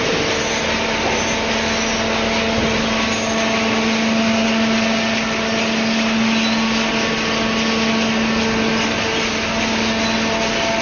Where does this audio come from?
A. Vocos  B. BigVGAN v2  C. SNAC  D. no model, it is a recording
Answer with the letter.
D